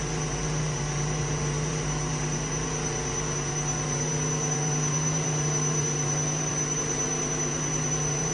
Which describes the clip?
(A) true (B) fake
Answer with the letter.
B